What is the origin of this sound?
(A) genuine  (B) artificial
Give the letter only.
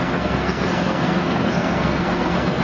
B